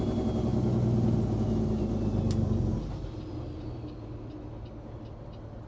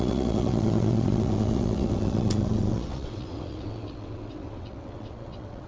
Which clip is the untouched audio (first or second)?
first